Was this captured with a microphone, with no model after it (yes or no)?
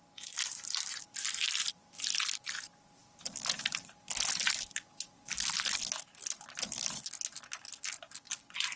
yes